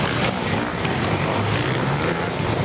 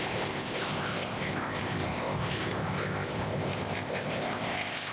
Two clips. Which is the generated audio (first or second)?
second